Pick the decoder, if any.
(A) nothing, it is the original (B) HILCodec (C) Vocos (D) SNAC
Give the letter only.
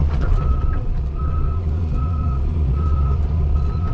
C